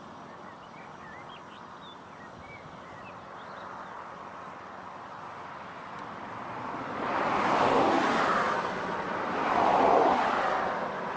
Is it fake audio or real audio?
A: real